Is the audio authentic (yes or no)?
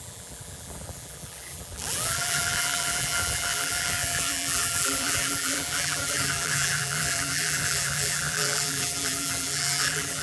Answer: no